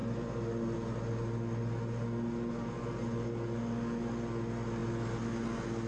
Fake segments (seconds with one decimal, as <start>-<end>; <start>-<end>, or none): none